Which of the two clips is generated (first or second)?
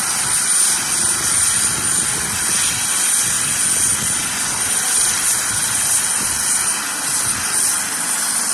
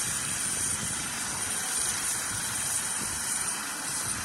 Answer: second